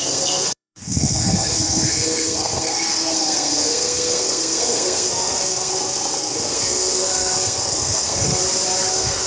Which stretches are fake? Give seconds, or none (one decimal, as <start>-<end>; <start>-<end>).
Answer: 0.0-8.4; 8.9-9.3

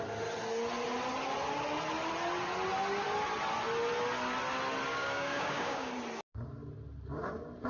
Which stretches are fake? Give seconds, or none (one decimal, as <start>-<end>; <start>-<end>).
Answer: 4.9-5.9